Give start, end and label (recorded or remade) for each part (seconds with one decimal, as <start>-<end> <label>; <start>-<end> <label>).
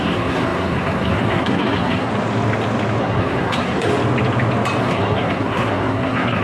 0.0-2.1 remade; 2.1-3.0 recorded; 3.0-3.9 remade; 3.9-4.8 recorded; 4.8-6.4 remade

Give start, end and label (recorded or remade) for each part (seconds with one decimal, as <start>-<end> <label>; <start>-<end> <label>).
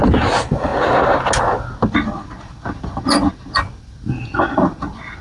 0.0-5.2 recorded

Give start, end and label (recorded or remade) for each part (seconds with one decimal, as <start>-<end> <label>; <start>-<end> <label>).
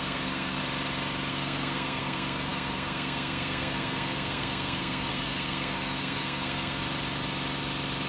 0.0-0.6 remade; 0.6-1.3 recorded; 1.3-6.8 remade; 6.8-8.1 recorded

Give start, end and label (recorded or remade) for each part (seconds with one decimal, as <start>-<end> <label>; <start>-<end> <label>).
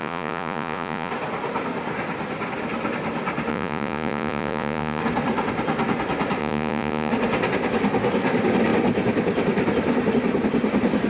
0.0-1.1 remade; 1.1-3.5 recorded; 3.5-5.0 remade; 5.0-6.4 recorded; 6.4-7.1 remade; 7.1-11.1 recorded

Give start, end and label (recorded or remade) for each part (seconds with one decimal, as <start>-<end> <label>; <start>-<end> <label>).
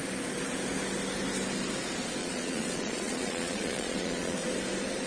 0.0-2.2 recorded; 2.2-4.5 remade; 4.5-5.1 recorded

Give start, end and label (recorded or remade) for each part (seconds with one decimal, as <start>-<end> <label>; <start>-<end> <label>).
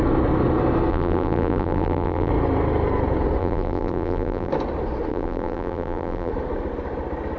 0.0-0.9 recorded; 0.9-2.3 remade; 2.3-3.4 recorded; 3.4-4.5 remade; 4.5-5.1 recorded; 5.1-6.3 remade; 6.3-7.4 recorded